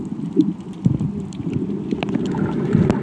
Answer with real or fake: real